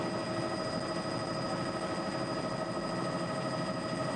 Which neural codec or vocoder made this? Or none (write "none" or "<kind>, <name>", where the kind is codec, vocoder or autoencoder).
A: none